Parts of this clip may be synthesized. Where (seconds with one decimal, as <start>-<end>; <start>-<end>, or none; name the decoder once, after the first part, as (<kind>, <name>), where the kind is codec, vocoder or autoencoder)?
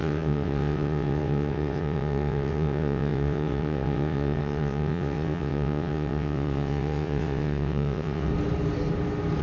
0.0-8.3 (vocoder, WaveNeXt)